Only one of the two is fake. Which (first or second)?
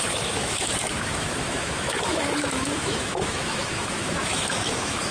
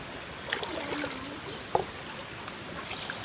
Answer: first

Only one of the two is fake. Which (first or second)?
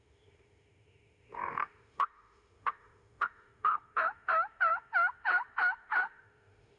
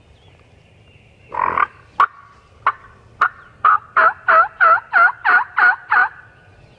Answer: first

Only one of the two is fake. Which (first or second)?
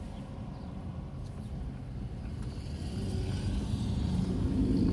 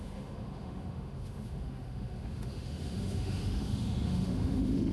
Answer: second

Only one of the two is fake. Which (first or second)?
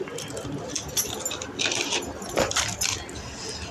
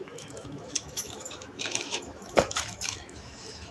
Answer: second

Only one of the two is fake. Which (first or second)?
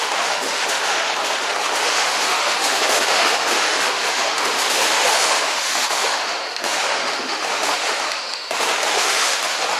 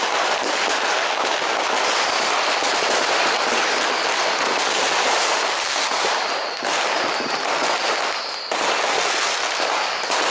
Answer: first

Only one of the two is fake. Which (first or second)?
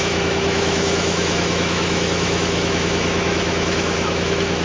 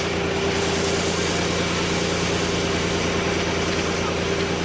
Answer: first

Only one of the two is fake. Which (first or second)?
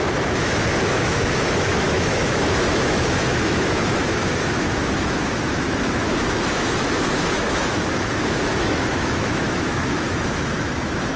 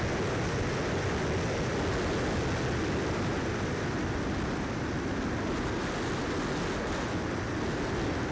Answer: first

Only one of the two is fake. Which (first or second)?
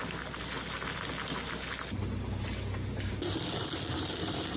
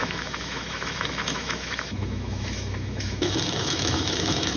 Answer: second